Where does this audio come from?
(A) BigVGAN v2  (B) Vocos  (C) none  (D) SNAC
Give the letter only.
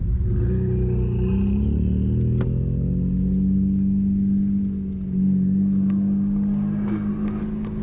C